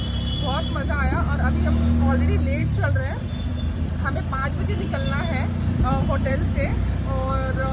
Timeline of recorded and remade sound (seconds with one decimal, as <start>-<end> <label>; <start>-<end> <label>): 0.0-7.7 recorded